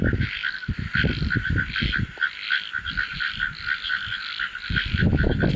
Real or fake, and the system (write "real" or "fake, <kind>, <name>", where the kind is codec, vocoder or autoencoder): real